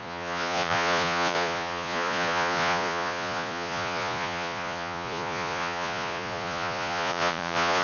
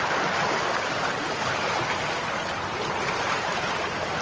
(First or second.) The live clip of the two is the second